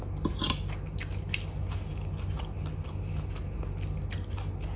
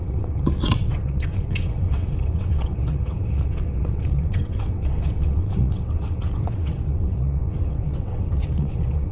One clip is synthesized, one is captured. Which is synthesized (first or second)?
second